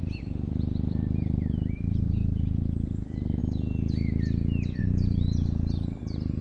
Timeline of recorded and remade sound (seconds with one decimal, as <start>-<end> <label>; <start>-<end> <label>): 0.0-3.4 remade; 3.4-4.8 recorded; 4.8-6.4 remade